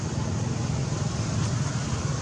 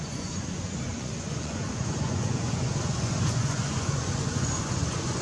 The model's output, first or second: second